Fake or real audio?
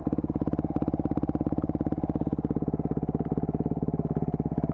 real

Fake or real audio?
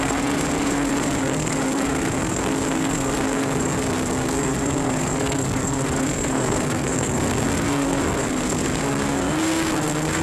fake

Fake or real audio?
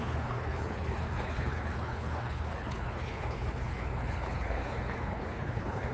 fake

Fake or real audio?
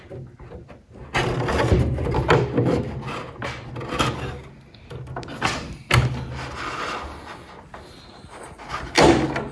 real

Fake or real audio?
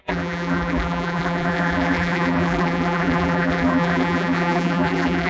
fake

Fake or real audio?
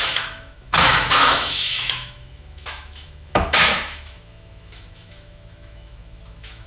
fake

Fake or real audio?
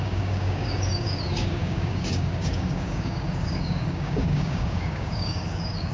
fake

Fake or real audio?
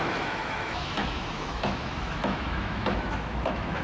fake